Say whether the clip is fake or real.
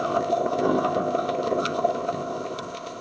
fake